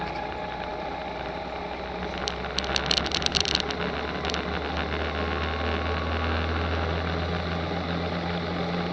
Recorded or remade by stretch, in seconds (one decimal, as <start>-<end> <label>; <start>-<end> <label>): 0.0-8.9 recorded